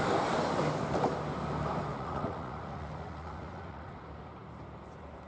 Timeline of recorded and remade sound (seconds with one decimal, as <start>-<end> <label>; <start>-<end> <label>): 0.0-1.9 recorded; 1.9-4.0 remade; 4.0-5.3 recorded